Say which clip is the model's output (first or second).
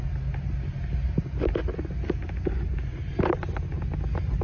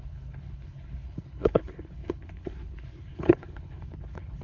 second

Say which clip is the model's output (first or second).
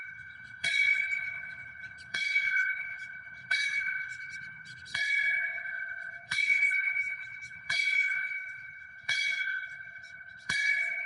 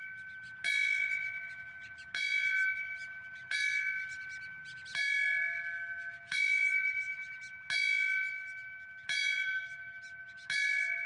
first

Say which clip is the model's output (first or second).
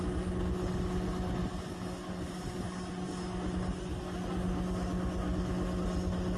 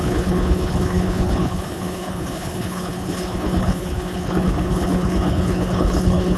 second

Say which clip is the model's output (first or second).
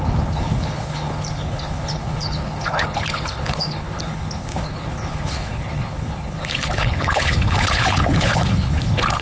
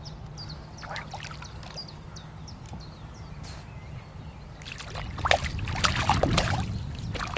first